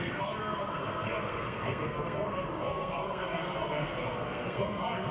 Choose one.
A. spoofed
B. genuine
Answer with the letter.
A